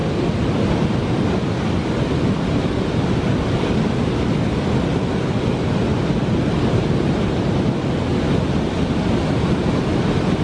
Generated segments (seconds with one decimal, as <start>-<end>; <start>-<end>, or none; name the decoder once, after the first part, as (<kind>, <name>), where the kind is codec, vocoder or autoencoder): none